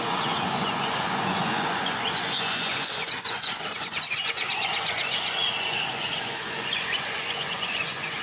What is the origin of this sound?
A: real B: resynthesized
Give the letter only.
B